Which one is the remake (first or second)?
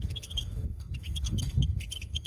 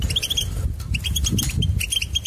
first